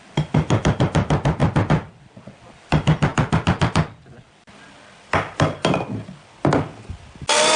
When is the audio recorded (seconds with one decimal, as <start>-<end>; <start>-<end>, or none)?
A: 0.0-7.6